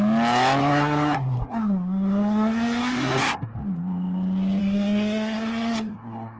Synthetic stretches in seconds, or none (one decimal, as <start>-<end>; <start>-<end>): 0.6-3.5; 4.6-6.4